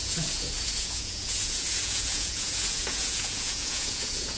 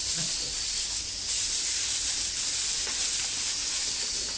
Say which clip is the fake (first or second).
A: first